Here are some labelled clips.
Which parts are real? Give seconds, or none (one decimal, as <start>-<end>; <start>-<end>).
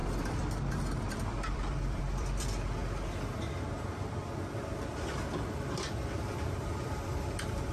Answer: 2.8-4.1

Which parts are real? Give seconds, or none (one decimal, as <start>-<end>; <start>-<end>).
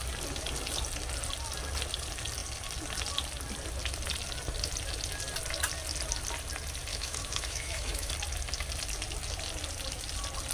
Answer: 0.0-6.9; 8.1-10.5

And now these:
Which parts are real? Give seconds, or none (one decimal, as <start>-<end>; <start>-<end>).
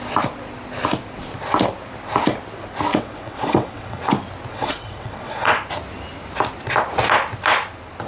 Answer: 0.0-2.9; 4.1-4.5; 5.6-8.1